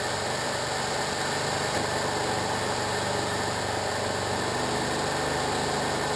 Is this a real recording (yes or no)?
yes